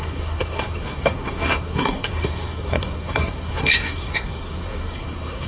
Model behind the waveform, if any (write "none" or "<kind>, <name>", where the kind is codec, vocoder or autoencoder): codec, SNAC